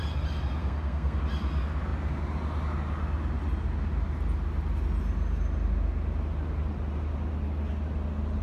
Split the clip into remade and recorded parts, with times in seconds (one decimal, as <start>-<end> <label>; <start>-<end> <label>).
0.0-0.6 recorded; 0.6-1.2 remade; 1.2-8.4 recorded